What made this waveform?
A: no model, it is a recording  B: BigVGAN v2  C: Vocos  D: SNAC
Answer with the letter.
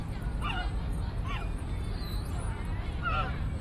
A